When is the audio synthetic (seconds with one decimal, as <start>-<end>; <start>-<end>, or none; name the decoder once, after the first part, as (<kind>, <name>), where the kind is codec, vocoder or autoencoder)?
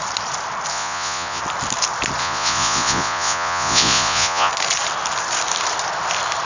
0.7-1.4 (vocoder, Vocos); 2.2-4.5